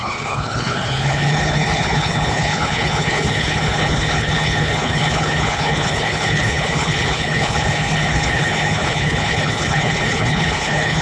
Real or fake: fake